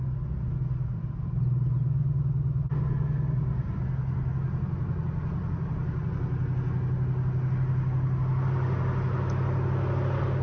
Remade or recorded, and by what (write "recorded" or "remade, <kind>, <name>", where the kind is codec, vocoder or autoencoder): recorded